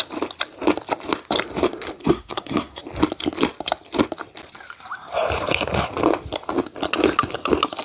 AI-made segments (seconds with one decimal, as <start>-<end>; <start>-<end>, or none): 2.0-2.8